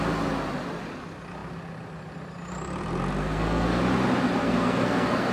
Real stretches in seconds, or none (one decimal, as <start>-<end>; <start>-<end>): 0.0-3.2; 3.8-4.4

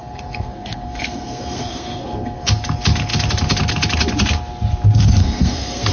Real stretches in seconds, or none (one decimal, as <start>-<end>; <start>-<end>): 2.5-5.2

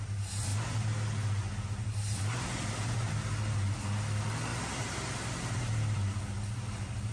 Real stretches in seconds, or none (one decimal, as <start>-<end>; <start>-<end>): 0.0-7.1

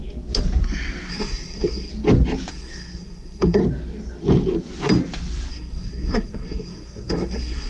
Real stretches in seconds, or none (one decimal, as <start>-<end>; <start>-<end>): 0.0-1.1; 1.9-2.5; 3.6-5.5

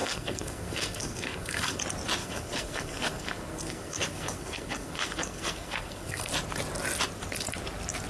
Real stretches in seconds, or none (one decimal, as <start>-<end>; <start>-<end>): 1.8-2.2; 6.3-8.1

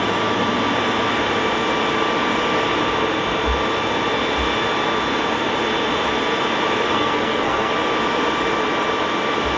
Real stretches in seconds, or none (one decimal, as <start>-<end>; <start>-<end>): 0.0-6.9; 7.7-9.6

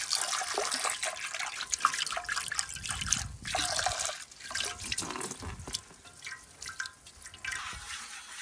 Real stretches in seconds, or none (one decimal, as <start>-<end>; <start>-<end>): 0.0-8.4

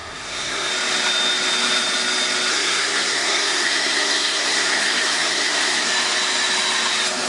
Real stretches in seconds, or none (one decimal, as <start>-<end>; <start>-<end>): 0.7-2.5; 5.9-7.3